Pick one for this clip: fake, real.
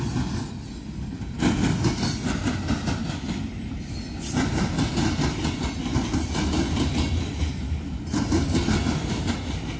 real